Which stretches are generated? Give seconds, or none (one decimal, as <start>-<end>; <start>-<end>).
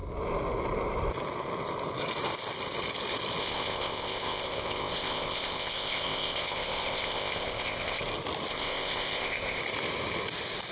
3.4-8.0; 8.5-9.6